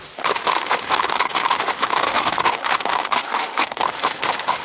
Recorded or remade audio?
remade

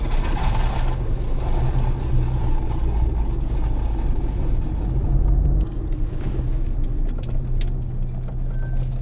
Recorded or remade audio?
recorded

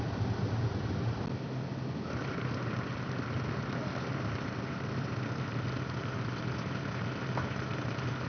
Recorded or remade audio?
recorded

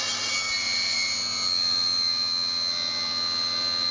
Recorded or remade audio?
recorded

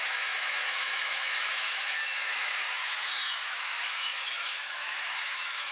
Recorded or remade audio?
remade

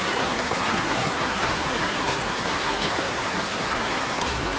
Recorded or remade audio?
remade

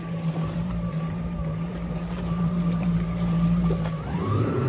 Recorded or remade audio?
remade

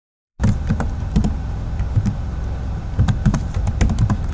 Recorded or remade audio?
remade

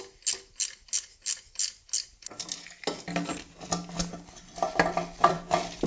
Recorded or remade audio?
recorded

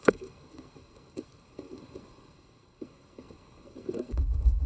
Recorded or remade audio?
remade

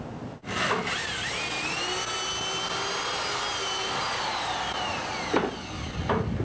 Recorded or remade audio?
recorded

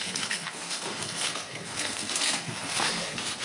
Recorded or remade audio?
remade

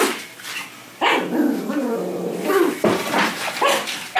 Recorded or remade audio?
recorded